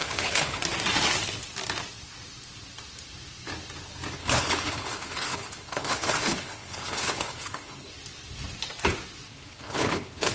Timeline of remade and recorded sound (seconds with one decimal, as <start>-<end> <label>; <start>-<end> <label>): 0.0-0.6 remade; 0.6-4.2 recorded; 4.2-7.9 remade; 7.9-9.3 recorded; 9.3-10.3 remade